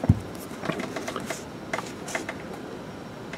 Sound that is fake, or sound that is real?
real